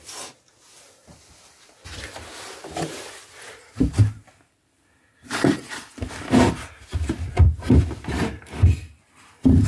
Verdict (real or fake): real